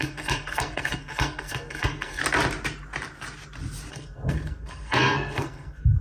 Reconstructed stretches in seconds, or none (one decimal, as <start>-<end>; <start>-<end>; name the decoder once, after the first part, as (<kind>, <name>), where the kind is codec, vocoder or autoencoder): 0.0-2.2 (codec, SNAC); 3.9-6.0